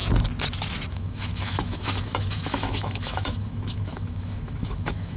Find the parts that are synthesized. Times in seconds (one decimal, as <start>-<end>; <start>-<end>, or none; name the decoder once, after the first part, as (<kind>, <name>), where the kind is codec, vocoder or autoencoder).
0.9-5.2 (autoencoder, DAC-VAE)